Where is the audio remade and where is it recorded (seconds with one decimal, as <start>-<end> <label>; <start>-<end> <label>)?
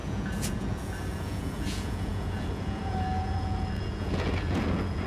0.0-5.1 remade